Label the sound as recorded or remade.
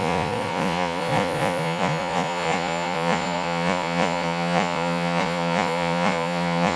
remade